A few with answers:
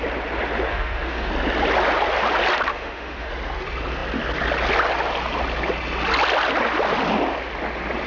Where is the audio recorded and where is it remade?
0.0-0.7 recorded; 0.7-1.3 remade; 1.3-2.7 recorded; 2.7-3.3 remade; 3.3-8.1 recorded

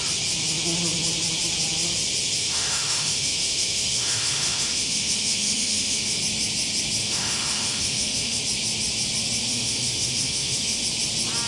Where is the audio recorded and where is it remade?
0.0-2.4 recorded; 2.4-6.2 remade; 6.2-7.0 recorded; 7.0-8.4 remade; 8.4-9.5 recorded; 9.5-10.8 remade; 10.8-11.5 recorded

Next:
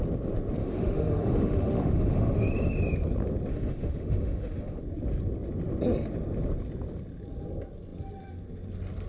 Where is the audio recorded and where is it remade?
0.0-0.6 recorded; 0.6-2.5 remade; 2.5-3.5 recorded; 3.5-4.8 remade; 4.8-9.1 recorded

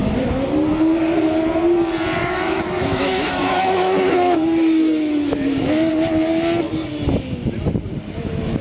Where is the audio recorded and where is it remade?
0.0-2.2 recorded; 2.2-5.9 remade; 5.9-8.6 recorded